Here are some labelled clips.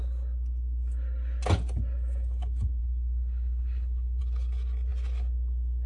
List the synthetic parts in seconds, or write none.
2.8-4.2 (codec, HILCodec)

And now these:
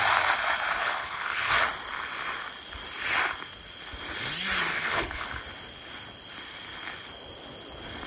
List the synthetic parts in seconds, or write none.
0.8-1.5 (codec, HILCodec); 4.7-5.4

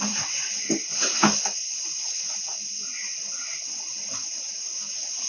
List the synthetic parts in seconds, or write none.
none

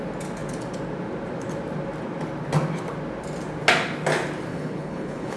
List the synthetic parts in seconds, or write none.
4.5-5.4 (codec, HILCodec)

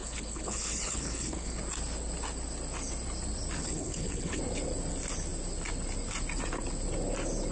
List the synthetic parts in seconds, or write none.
0.0-1.6 (codec, HILCodec); 3.6-4.4

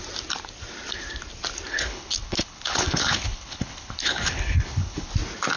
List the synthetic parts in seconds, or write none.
1.7-5.1 (codec, HILCodec)

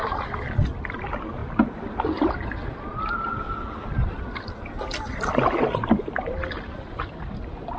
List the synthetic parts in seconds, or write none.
none